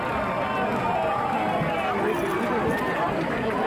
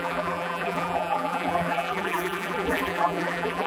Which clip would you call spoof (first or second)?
second